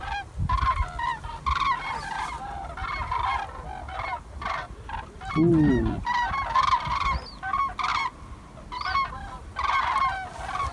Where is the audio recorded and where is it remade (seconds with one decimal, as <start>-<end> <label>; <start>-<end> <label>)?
0.0-10.7 recorded